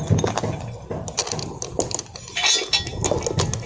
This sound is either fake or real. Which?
real